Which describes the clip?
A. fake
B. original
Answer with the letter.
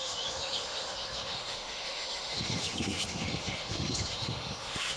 A